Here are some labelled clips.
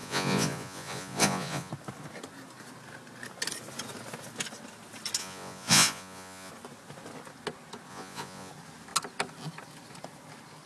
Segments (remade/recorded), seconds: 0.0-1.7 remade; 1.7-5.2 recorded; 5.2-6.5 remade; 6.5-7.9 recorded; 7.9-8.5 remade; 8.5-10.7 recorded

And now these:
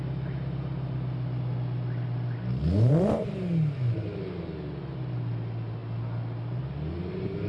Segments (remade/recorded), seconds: 0.0-7.5 recorded

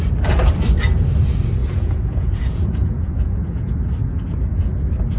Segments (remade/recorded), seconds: 0.0-1.6 recorded; 1.6-3.8 remade; 3.8-5.2 recorded